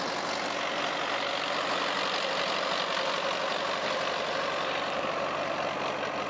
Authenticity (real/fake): real